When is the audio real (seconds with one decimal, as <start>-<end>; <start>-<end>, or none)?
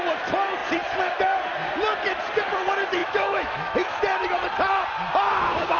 0.0-3.0; 4.0-5.8